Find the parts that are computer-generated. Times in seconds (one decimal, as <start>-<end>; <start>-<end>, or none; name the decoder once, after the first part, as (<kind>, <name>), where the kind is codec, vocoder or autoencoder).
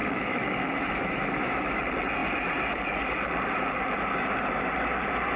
0.0-1.8 (autoencoder, DAC-VAE)